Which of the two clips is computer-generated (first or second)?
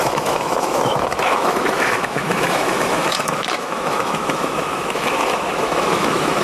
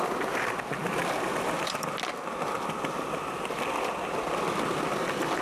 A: first